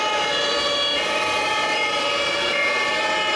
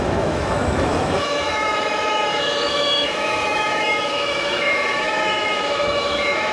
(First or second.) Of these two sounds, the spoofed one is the second